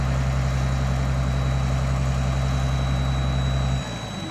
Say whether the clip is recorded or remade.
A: recorded